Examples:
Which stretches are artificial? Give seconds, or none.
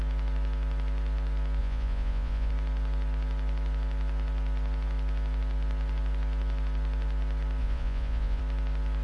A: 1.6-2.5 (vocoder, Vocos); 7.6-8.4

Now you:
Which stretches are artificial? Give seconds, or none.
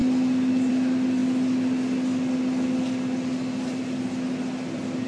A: none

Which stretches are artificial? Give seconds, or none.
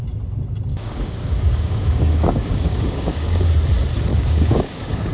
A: 0.7-3.5 (codec, DAC); 4.1-5.1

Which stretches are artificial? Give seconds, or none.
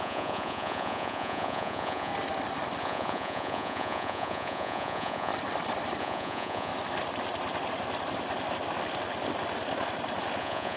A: 0.0-2.1 (vocoder, Vocos); 2.8-5.3; 6.0-6.7; 10.4-10.8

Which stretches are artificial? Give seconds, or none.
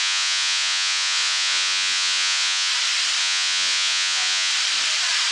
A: 0.0-2.7 (vocoder, Vocos); 3.2-4.5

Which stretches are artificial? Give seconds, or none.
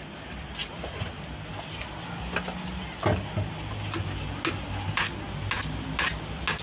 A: none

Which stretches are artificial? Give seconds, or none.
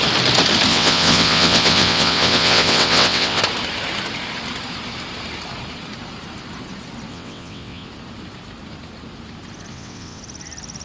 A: 0.7-3.4 (vocoder, WaveNeXt); 7.1-7.9; 9.7-10.2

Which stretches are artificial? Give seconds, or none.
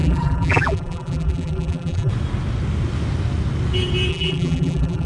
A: 0.0-2.1 (vocoder, BigVGAN v2); 4.1-5.1